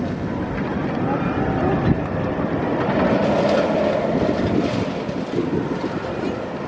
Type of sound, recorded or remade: recorded